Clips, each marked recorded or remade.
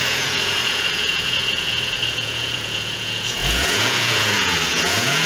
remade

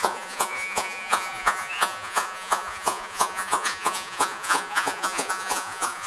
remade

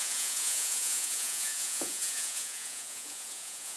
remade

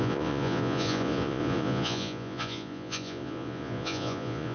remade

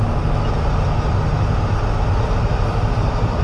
recorded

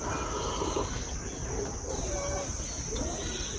recorded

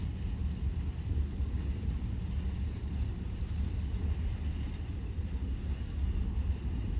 recorded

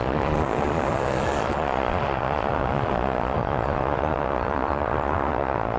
remade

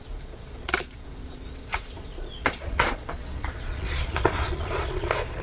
remade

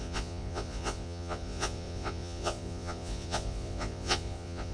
remade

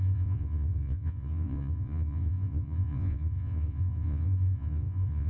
remade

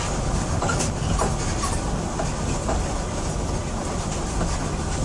recorded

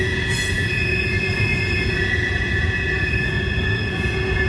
remade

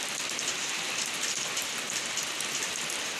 recorded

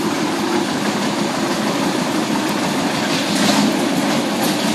recorded